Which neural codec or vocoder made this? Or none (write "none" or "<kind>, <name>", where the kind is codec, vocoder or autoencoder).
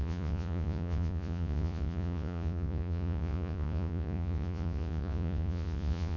vocoder, Vocos